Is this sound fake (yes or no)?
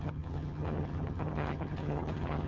yes